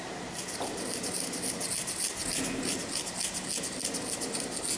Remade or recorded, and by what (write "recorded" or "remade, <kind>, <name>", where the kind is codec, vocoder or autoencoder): recorded